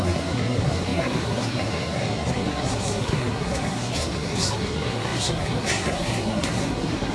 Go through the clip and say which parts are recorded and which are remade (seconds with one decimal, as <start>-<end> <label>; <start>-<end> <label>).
0.0-7.1 remade